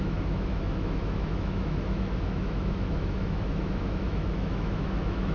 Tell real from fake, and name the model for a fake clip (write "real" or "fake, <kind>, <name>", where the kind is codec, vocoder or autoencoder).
fake, autoencoder, DAC-VAE